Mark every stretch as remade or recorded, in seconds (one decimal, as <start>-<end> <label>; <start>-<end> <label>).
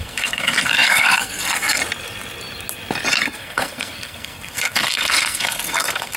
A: 0.0-1.8 remade; 1.8-3.1 recorded; 3.1-6.2 remade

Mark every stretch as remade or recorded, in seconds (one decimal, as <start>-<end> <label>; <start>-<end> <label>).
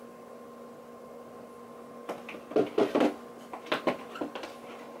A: 0.0-5.0 recorded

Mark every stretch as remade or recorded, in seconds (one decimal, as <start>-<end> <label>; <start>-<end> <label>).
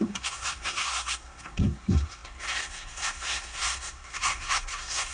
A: 0.0-5.1 remade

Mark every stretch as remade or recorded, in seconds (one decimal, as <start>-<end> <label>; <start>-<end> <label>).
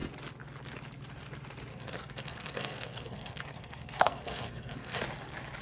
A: 0.0-1.7 recorded; 1.7-5.0 remade; 5.0-5.6 recorded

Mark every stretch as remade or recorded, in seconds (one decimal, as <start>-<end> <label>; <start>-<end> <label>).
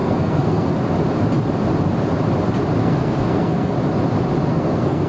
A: 0.0-0.7 remade; 0.7-2.8 recorded; 2.8-3.7 remade; 3.7-4.5 recorded; 4.5-5.1 remade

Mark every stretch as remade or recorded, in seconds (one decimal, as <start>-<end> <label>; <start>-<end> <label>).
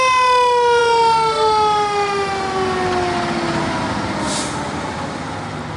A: 0.0-5.8 recorded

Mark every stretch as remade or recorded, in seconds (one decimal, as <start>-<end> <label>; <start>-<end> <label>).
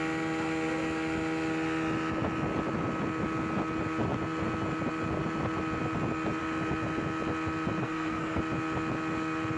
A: 0.0-7.8 recorded; 7.8-8.4 remade; 8.4-9.6 recorded